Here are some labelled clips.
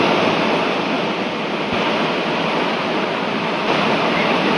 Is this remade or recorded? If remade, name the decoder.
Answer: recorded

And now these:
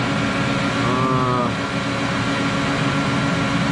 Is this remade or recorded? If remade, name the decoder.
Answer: recorded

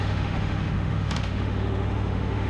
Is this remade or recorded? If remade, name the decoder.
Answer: remade, autoencoder, DAC-VAE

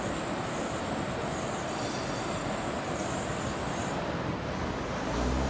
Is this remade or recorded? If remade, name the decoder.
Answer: recorded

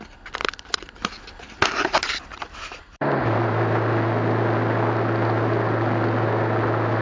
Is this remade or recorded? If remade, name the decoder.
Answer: recorded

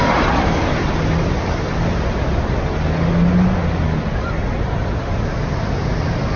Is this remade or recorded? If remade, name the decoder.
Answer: recorded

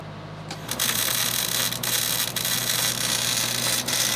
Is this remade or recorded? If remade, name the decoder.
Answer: recorded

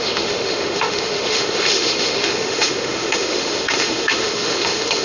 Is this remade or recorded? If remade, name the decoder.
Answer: remade, autoencoder, DAC-VAE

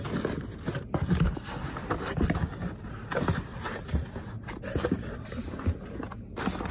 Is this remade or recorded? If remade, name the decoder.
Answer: recorded